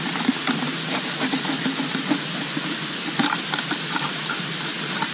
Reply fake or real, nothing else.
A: real